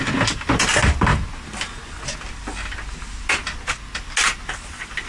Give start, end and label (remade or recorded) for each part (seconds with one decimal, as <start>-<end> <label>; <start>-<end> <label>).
0.0-5.1 recorded